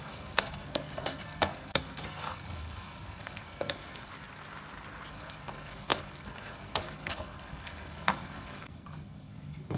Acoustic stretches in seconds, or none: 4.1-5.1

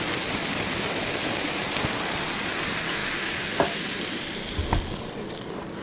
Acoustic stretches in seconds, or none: 0.0-0.4; 1.0-5.8

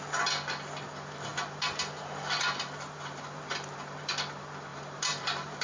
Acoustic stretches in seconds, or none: 0.0-1.3; 4.1-4.7

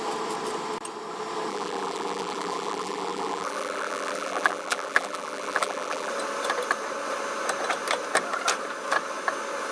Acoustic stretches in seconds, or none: 0.0-1.5; 6.1-9.7

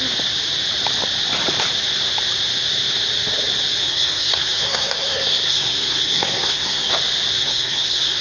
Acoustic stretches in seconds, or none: 0.0-3.8; 6.9-7.4

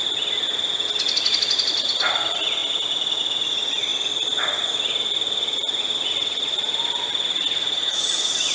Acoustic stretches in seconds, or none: 0.0-8.5